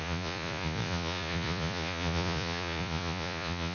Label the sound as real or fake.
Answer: fake